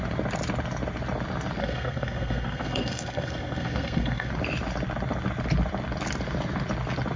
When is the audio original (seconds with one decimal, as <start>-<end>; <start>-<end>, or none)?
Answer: 0.0-1.6; 4.3-7.2